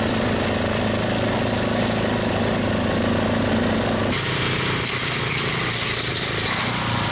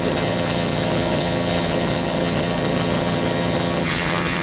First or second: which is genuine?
first